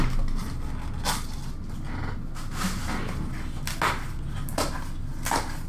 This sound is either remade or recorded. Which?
recorded